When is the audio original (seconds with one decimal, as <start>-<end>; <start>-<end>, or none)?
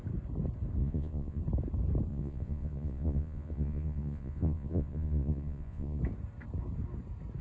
0.0-0.8; 1.4-2.1; 6.0-7.4